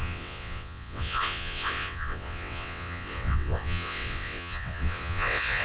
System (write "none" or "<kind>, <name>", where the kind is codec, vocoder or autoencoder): vocoder, WaveNeXt